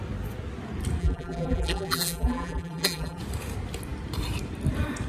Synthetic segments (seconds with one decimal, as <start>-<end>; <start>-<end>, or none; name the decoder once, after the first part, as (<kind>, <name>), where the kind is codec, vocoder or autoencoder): 1.0-3.2 (vocoder, BigVGAN v2)

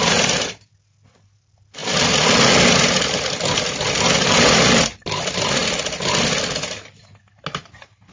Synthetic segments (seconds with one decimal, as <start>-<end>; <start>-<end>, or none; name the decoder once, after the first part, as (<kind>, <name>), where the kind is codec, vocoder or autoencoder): 1.8-2.3 (vocoder, BigVGAN v2)

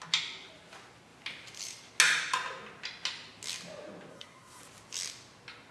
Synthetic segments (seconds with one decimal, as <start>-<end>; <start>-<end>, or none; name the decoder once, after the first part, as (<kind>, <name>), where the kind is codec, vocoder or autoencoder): 4.1-4.6 (codec, SNAC)

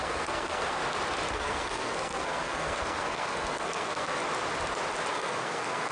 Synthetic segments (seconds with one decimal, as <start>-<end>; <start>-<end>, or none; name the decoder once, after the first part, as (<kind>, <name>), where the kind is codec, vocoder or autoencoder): 0.0-0.8 (codec, SNAC); 1.3-4.2; 5.1-5.9

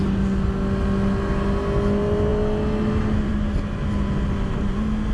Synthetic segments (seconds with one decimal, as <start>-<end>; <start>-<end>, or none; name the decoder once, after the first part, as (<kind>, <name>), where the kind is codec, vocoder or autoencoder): none

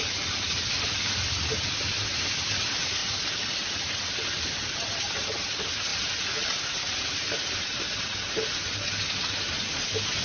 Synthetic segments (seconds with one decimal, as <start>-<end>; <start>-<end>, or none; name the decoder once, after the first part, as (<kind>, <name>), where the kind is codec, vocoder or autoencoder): none

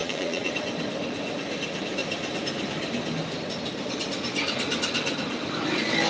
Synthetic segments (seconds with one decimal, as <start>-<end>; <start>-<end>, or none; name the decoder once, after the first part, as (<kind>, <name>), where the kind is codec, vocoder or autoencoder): 0.0-0.5 (vocoder, Vocos)